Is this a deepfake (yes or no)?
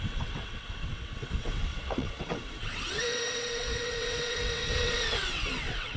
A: yes